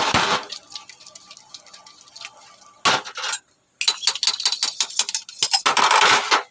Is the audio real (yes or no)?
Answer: yes